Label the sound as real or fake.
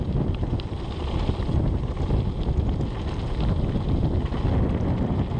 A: real